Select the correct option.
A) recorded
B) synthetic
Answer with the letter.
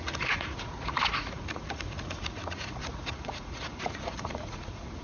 B